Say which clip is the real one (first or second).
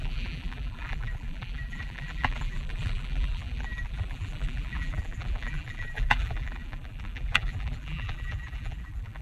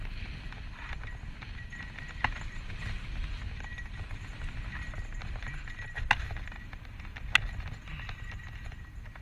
second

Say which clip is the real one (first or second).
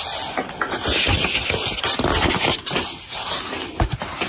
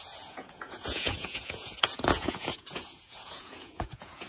first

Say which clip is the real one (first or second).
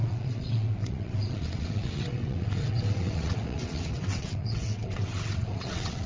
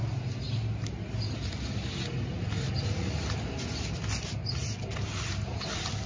second